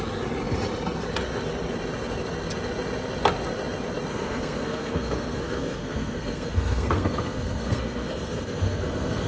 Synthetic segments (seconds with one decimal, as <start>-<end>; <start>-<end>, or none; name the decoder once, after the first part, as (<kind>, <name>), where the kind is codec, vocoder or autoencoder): 4.1-9.3 (codec, SNAC)